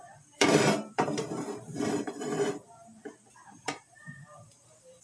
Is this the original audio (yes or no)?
no